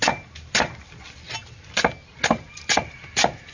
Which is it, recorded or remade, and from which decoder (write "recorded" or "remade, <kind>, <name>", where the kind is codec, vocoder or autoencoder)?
recorded